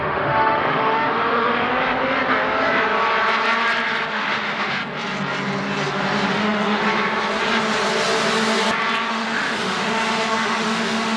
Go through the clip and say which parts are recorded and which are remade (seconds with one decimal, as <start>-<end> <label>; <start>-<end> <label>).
0.0-1.7 remade; 1.7-4.1 recorded; 4.1-4.8 remade; 4.8-6.3 recorded; 6.3-6.8 remade; 6.8-9.1 recorded; 9.1-11.2 remade